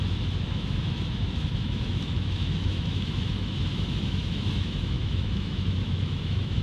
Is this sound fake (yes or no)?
yes